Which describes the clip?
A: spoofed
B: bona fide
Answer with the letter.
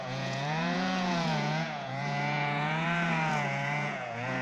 A